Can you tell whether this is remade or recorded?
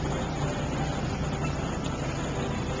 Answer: recorded